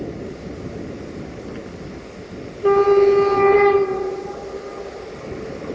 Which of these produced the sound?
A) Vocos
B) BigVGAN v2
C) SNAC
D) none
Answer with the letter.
D